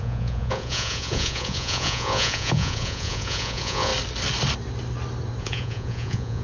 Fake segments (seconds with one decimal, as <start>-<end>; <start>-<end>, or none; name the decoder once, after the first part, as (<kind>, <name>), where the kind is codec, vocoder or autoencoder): 0.0-3.9 (vocoder, Vocos); 5.4-6.4